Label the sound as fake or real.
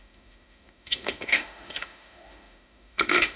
fake